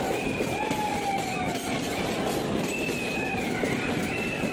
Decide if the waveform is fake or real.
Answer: real